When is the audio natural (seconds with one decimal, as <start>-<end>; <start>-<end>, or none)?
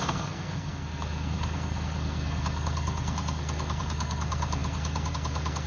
none